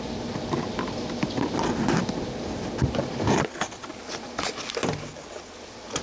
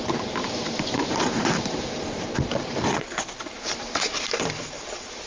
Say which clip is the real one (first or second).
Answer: first